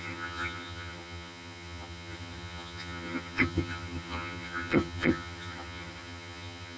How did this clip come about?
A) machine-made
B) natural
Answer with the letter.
A